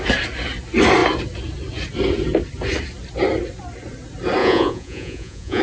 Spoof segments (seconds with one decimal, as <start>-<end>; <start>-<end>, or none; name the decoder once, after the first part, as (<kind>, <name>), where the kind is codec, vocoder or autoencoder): 4.4-5.6 (vocoder, Vocos)